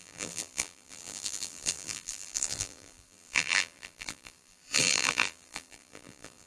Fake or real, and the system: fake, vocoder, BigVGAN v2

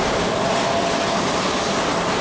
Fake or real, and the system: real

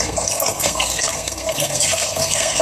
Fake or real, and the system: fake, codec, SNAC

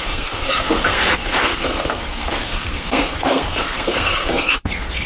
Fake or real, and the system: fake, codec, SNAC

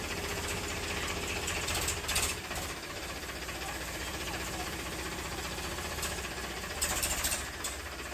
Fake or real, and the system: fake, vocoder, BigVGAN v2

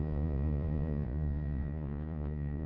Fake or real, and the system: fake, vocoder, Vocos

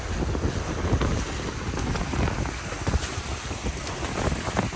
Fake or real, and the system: real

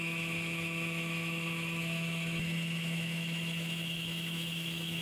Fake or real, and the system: fake, autoencoder, DAC-VAE